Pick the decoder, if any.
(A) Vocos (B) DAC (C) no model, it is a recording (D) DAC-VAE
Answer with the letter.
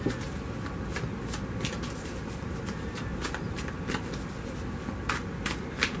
C